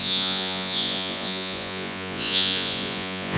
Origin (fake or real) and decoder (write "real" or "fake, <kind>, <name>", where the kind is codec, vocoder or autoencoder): fake, vocoder, Vocos